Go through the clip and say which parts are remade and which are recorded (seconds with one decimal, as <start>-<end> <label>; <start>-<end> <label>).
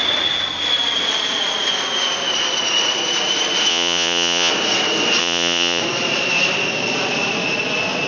0.0-3.7 recorded; 3.7-4.5 remade; 4.5-5.2 recorded; 5.2-5.8 remade; 5.8-8.1 recorded